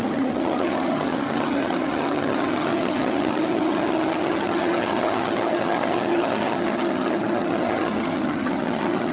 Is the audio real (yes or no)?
no